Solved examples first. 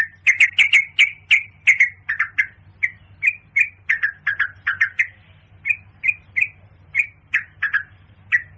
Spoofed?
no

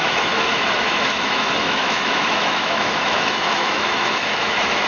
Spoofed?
yes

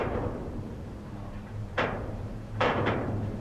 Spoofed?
yes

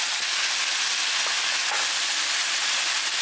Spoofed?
no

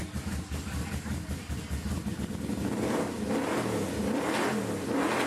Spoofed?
no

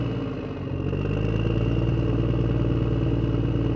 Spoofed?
no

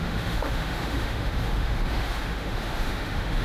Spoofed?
yes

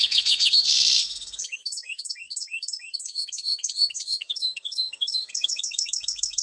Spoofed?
yes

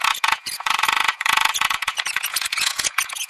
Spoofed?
yes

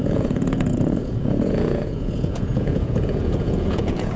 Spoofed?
yes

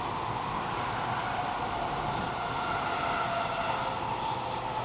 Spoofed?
no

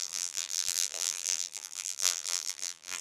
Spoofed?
yes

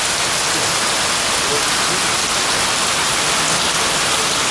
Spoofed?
no